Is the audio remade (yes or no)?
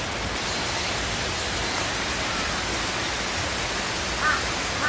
no